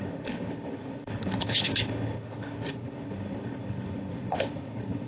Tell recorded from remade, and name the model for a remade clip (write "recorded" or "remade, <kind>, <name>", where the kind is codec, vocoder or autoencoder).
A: remade, codec, HILCodec